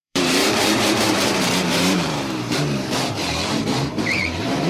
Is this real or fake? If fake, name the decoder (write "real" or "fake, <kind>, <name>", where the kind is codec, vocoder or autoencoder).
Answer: fake, vocoder, BigVGAN v2